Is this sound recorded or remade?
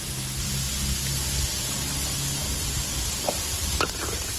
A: recorded